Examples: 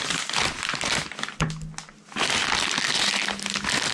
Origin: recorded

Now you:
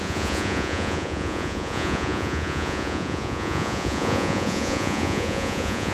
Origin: remade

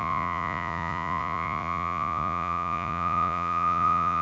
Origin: remade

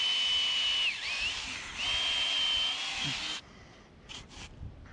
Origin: recorded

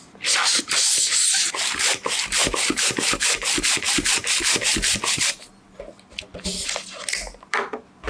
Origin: recorded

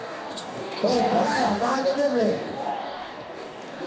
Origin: remade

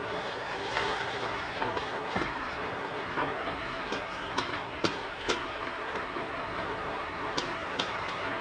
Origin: remade